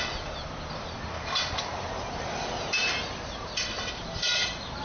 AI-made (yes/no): no